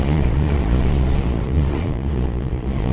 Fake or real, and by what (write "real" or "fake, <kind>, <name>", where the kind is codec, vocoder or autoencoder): fake, vocoder, Vocos